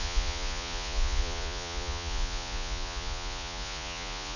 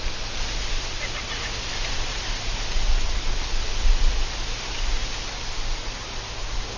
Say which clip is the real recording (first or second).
second